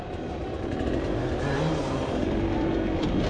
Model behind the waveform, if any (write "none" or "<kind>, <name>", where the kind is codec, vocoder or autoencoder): none